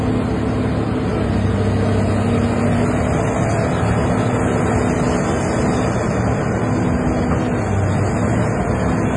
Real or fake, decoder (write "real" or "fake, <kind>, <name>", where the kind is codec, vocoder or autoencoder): real